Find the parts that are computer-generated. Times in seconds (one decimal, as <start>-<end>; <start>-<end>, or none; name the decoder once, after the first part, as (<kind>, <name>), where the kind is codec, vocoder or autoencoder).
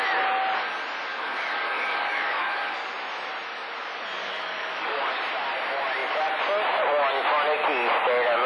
1.1-2.9 (codec, DAC); 4.2-5.1